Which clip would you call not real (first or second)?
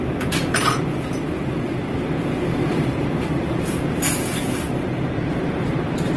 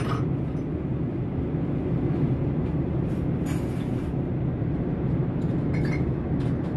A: first